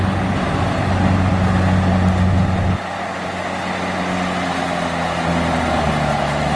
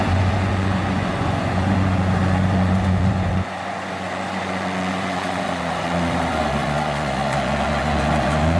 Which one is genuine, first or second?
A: first